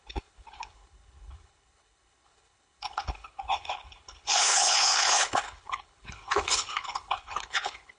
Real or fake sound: fake